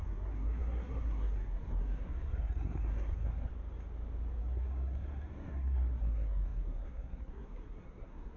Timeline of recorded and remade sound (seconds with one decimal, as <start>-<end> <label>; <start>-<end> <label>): 0.0-3.5 remade; 3.5-4.4 recorded; 4.4-8.4 remade